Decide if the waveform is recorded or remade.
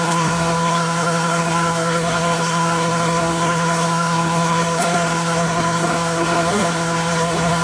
remade